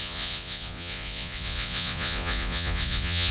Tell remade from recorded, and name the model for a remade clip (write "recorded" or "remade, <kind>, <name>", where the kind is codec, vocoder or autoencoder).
remade, vocoder, Vocos